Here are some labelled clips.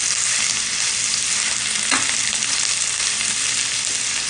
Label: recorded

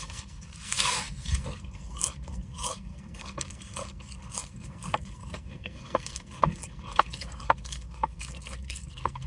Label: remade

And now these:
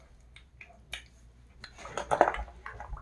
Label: recorded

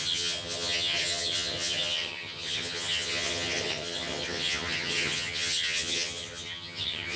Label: remade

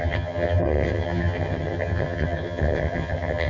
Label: remade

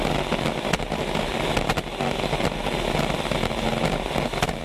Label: recorded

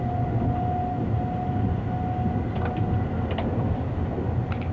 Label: recorded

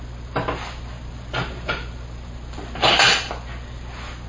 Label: recorded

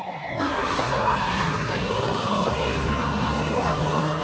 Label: remade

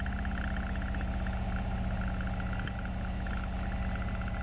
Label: recorded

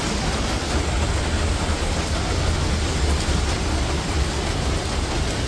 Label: recorded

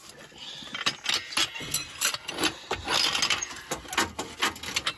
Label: recorded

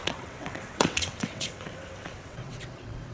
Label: remade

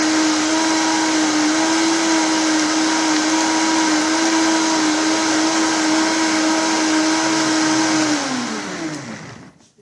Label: recorded